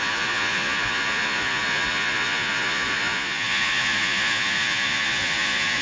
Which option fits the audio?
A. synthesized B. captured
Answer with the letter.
A